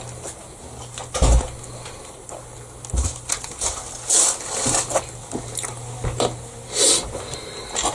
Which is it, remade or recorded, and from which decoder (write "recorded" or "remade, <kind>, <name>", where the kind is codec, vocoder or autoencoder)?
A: recorded